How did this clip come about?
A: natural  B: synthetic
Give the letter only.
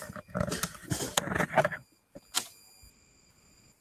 A